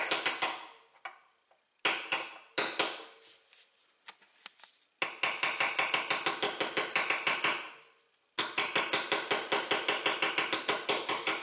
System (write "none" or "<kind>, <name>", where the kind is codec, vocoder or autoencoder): none